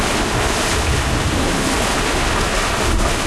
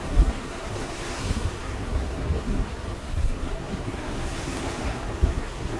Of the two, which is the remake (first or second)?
second